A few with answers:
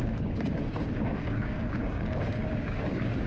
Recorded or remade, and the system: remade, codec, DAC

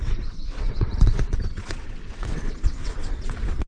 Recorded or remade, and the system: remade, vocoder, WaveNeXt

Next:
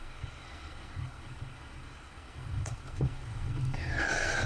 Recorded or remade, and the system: remade, codec, SNAC